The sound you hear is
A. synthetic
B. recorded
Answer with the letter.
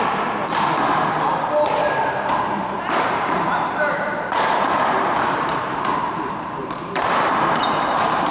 A